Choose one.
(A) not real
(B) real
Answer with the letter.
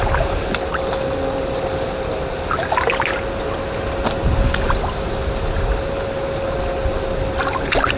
B